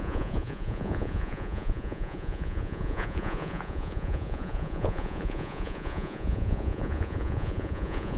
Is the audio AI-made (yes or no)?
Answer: yes